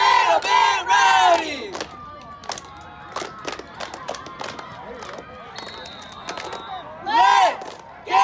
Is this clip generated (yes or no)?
no